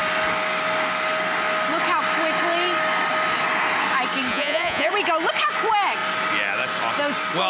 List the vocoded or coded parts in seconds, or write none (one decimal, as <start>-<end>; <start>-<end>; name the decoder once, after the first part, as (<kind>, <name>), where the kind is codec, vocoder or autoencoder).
4.3-4.9 (vocoder, Vocos)